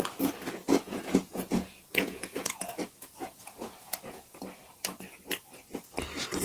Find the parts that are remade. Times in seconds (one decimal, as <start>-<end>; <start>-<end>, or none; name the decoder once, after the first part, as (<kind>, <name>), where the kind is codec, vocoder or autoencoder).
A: 0.6-4.4 (vocoder, Vocos)